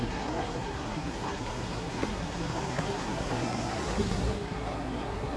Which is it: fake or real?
fake